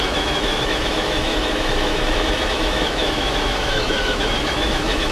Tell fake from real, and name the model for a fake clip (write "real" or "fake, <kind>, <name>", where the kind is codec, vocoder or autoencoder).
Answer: fake, autoencoder, DAC-VAE